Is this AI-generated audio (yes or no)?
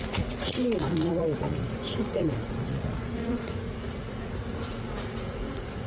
yes